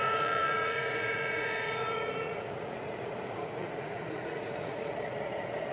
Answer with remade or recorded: remade